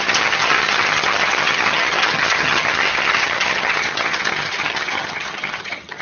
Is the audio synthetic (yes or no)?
yes